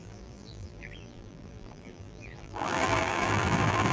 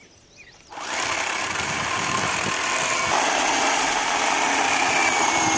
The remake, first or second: first